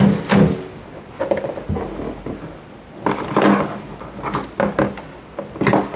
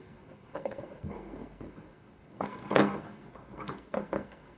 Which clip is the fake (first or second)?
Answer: second